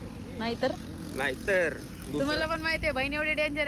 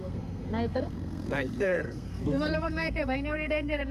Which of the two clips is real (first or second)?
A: first